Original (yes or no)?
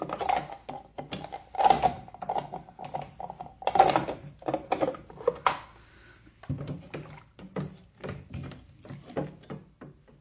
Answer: yes